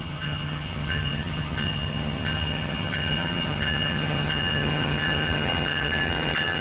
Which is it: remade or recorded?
remade